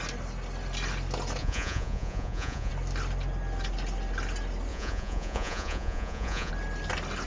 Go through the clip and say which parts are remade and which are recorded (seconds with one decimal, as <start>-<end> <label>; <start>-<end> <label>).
0.0-1.4 recorded; 1.4-2.7 remade; 2.7-4.7 recorded; 4.7-6.5 remade; 6.5-7.3 recorded